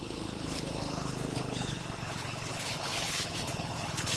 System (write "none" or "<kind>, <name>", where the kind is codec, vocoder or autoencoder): codec, HILCodec